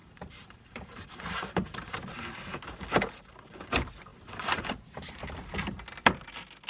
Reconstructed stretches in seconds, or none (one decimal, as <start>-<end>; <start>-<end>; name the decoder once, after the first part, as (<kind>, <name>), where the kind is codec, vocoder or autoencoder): 0.0-1.9 (vocoder, BigVGAN v2); 4.1-5.1